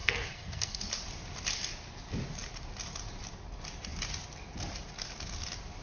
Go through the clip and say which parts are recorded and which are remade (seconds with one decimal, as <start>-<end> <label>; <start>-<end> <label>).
0.0-0.8 remade; 0.8-5.8 recorded